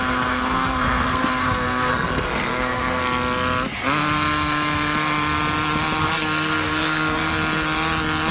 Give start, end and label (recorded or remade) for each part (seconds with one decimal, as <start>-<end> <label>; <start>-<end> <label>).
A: 0.0-3.0 remade; 3.0-6.0 recorded; 6.0-7.3 remade; 7.3-8.3 recorded